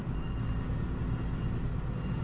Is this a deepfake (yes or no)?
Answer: no